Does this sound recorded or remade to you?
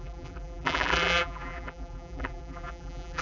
remade